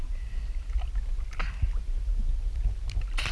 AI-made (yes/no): no